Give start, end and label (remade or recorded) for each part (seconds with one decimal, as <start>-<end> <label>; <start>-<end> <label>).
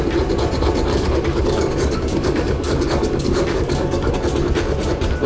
0.0-0.9 recorded; 0.9-4.1 remade; 4.1-5.3 recorded